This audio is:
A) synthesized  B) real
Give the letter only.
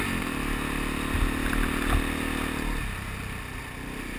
B